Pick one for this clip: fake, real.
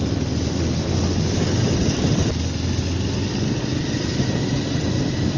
real